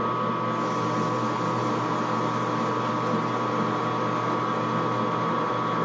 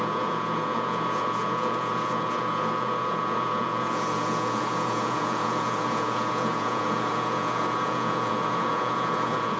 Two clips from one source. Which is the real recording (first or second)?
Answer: first